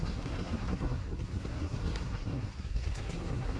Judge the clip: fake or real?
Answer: fake